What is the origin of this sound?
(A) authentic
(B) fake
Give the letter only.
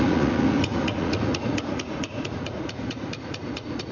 B